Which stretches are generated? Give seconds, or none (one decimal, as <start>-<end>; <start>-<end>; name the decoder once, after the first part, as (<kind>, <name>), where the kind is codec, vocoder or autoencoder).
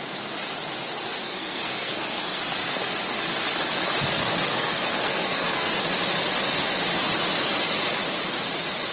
1.2-2.4 (codec, SNAC); 4.5-5.8